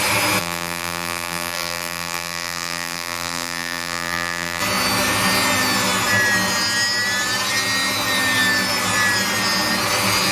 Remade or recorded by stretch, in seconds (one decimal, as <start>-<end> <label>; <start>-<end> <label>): 0.0-0.4 recorded; 0.4-4.6 remade; 4.6-10.3 recorded